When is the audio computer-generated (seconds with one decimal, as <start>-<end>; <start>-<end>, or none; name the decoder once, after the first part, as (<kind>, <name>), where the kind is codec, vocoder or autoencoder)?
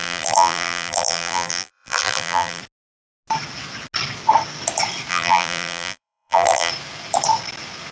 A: 0.0-2.6 (vocoder, BigVGAN v2); 5.1-6.7